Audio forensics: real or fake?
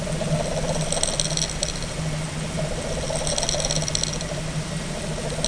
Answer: real